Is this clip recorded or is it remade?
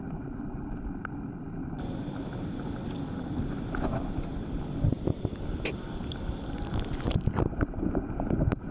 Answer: recorded